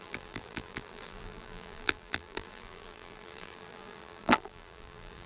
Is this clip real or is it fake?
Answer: fake